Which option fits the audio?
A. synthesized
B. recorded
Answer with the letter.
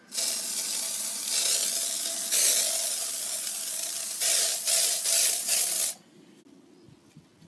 B